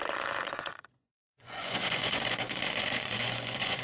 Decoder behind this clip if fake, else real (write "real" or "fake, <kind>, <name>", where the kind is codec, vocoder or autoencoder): fake, vocoder, Vocos